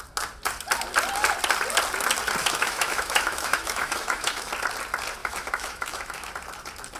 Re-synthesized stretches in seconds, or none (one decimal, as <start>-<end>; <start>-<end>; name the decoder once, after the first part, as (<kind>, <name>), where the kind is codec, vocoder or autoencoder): 2.4-4.5 (autoencoder, DAC-VAE); 5.2-6.3